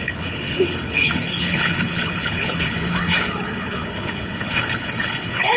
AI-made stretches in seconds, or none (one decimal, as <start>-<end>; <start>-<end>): 0.0-5.6